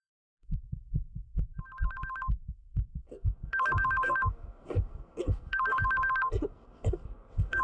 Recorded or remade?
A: remade